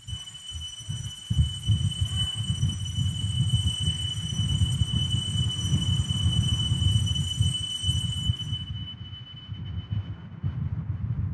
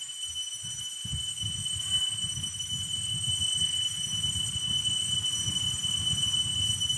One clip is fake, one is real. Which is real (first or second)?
second